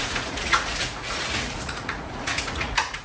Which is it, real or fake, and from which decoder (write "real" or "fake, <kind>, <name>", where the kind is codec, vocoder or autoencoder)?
fake, vocoder, Vocos